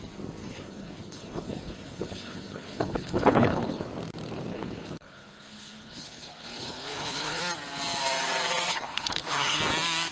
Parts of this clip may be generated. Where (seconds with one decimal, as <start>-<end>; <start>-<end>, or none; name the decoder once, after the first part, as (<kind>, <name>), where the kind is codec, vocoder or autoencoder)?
0.4-3.9 (codec, HILCodec); 4.5-7.4; 8.7-9.6

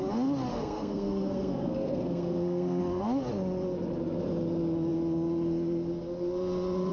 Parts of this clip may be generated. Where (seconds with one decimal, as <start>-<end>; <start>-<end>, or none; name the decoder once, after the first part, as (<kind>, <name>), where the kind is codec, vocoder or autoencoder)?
0.5-2.8 (codec, SNAC)

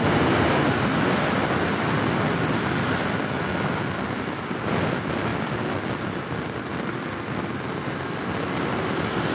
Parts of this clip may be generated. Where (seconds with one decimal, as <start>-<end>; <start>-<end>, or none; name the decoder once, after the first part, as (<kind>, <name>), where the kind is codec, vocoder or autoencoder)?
none

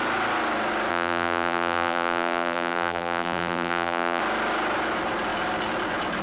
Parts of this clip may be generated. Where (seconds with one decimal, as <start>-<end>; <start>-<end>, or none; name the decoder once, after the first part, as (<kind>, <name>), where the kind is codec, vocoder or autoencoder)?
0.9-4.2 (vocoder, BigVGAN v2)

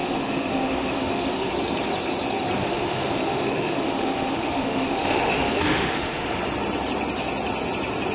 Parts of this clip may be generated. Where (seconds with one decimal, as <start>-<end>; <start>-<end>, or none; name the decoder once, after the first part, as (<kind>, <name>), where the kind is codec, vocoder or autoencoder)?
0.0-1.5 (autoencoder, DAC-VAE); 2.6-6.4

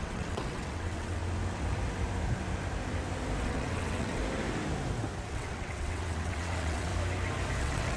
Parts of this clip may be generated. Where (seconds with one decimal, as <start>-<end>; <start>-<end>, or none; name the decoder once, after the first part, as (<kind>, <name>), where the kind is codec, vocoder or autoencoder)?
0.0-1.2 (vocoder, WaveNeXt); 3.4-4.2; 5.3-6.9; 7.6-8.0